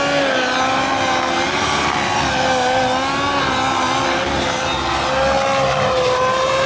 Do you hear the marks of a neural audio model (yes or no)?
no